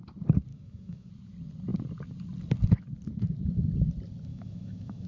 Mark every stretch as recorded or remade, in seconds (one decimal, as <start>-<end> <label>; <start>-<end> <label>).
0.0-0.5 recorded; 0.5-1.1 remade; 1.1-4.3 recorded; 4.3-5.1 remade